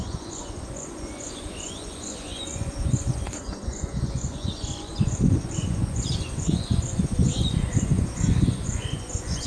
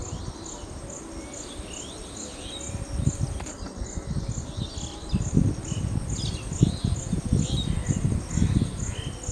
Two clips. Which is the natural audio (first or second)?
second